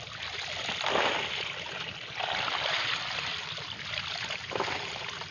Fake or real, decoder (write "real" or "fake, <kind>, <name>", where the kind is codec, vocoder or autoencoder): real